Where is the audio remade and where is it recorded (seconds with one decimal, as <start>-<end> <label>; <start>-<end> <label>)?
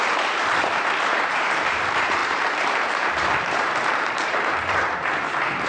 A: 0.0-5.7 remade